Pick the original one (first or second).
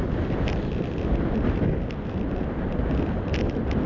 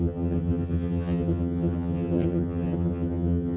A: first